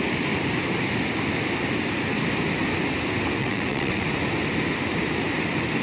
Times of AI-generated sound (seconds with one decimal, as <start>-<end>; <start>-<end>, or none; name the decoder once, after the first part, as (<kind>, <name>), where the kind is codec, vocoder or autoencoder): 3.4-4.0 (vocoder, WaveNeXt)